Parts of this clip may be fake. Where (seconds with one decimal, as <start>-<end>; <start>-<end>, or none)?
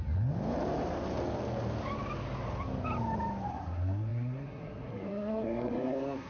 3.5-6.3